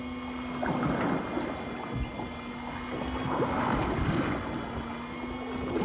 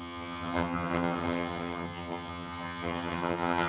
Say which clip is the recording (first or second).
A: first